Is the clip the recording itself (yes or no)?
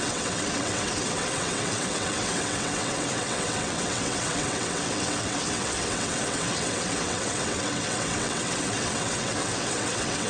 no